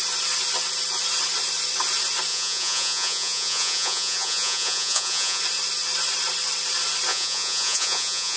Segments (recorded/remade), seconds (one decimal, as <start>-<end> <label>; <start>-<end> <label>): 0.0-2.3 recorded; 2.3-5.4 remade; 5.4-7.1 recorded; 7.1-8.4 remade